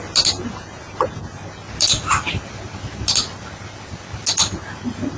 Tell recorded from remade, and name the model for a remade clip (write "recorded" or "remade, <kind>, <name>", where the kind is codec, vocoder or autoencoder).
recorded